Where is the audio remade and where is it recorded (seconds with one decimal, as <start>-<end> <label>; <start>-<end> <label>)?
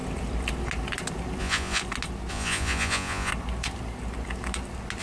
0.0-1.4 recorded; 1.4-1.8 remade; 1.8-2.3 recorded; 2.3-3.3 remade; 3.3-5.0 recorded